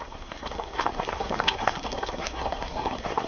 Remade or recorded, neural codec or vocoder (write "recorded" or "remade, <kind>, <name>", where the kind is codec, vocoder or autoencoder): remade, codec, SNAC